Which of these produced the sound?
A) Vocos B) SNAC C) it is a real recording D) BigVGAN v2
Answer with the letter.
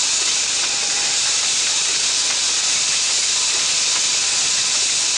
D